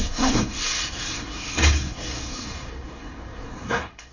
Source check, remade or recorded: remade